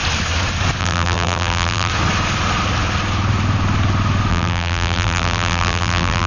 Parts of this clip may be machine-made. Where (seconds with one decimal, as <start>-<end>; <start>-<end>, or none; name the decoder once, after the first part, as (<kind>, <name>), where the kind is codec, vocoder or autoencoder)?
0.8-1.9 (vocoder, BigVGAN v2); 4.3-6.3